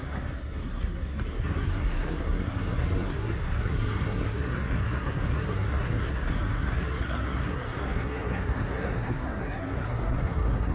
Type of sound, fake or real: fake